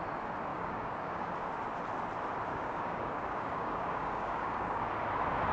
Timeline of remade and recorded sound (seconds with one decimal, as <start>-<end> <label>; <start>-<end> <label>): 0.0-0.5 recorded; 0.5-1.3 remade; 1.3-2.5 recorded; 2.5-4.8 remade; 4.8-5.5 recorded